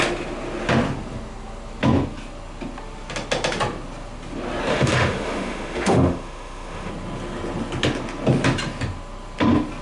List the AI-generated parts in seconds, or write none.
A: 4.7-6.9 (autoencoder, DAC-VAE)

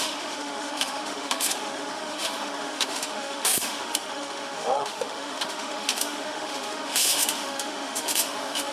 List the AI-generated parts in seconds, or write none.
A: 0.0-8.7 (autoencoder, DAC-VAE)

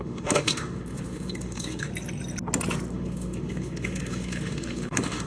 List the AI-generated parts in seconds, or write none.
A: 0.0-1.9 (autoencoder, DAC-VAE); 2.9-5.3

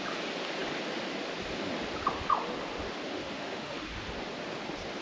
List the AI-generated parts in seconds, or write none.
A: 3.1-4.0 (autoencoder, DAC-VAE)

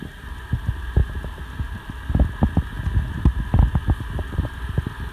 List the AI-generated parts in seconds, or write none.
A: none

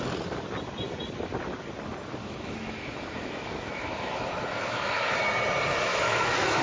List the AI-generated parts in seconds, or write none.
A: 2.2-5.3 (autoencoder, DAC-VAE); 5.9-6.6

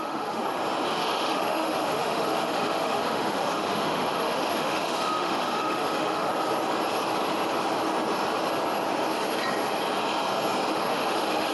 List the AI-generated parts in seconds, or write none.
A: 0.0-0.4 (autoencoder, DAC-VAE); 0.9-6.3; 10.7-11.5